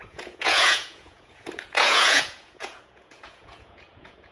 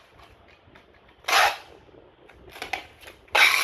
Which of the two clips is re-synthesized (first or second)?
first